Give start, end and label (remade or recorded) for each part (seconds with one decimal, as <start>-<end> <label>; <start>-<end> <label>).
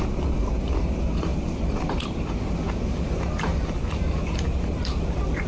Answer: 0.0-5.5 remade